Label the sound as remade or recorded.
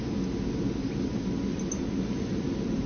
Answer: recorded